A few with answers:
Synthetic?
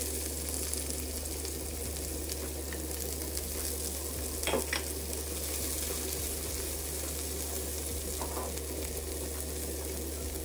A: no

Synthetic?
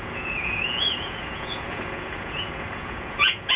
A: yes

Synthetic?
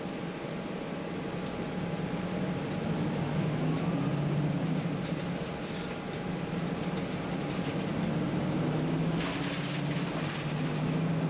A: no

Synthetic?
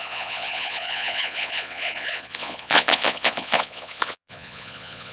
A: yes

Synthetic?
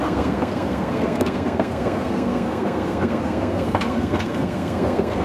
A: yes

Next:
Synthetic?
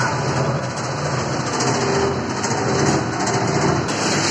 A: no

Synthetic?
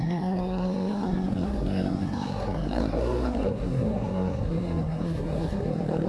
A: yes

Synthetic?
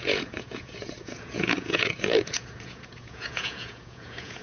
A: yes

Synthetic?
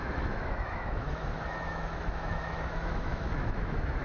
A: yes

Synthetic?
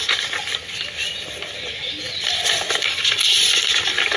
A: no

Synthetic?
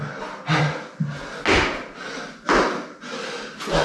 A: no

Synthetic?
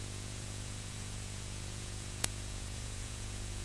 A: yes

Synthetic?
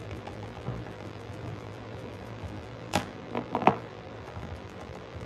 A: yes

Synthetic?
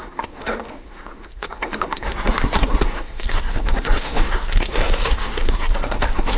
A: yes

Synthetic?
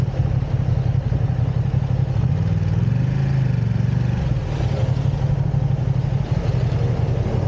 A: no